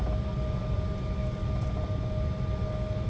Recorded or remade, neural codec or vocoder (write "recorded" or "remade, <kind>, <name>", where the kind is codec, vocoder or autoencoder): recorded